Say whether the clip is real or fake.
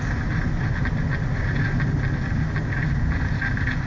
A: real